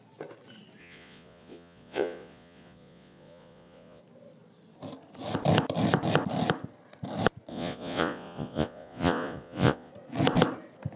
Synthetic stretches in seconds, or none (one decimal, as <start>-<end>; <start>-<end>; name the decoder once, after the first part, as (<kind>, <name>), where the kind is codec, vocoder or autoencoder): 0.8-4.0 (vocoder, Vocos); 7.5-9.9

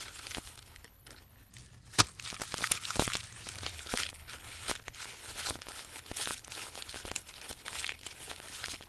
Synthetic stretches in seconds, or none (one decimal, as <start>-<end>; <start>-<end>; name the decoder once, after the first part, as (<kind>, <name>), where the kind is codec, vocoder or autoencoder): 0.0-1.5 (codec, HILCodec); 3.7-8.9

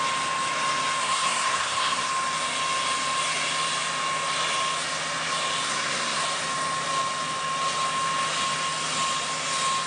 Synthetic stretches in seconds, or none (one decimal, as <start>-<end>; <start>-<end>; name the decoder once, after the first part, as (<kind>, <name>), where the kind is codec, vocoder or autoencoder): 1.0-2.1 (codec, SNAC); 5.7-6.2

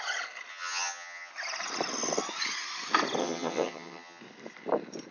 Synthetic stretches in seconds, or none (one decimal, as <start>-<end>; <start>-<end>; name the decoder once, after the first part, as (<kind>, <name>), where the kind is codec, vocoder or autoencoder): 0.5-1.3 (vocoder, HiFi-GAN); 3.2-4.2

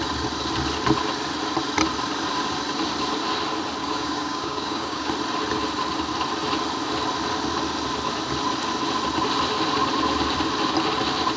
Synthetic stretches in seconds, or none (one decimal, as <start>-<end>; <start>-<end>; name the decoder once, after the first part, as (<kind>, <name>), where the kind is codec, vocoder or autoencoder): 3.8-5.1 (codec, DAC)